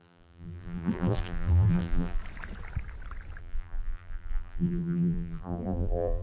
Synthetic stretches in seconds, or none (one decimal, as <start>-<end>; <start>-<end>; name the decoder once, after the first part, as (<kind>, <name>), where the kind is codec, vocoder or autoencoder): 0.0-2.2 (vocoder, BigVGAN v2); 3.4-6.2